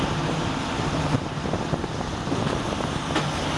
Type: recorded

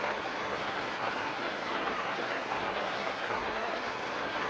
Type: remade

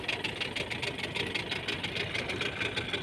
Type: recorded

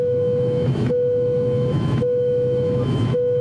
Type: remade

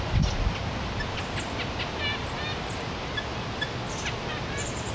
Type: recorded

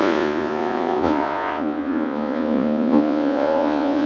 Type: remade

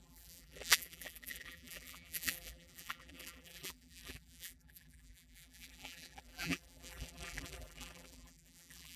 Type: remade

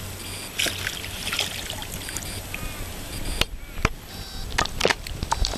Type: recorded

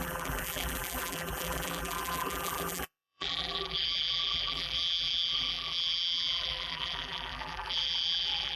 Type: remade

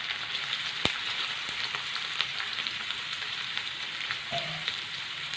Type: remade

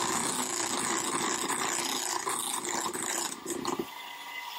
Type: recorded